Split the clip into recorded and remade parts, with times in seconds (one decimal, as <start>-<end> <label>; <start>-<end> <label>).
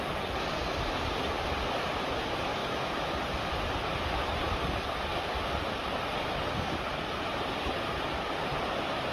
0.0-2.6 recorded; 2.6-3.1 remade; 3.1-9.1 recorded